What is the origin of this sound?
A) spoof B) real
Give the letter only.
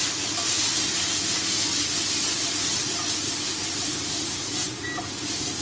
B